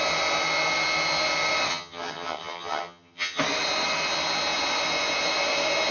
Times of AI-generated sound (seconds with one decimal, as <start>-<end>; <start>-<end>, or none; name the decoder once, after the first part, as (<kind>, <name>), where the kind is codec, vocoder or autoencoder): 1.7-3.4 (vocoder, HiFi-GAN)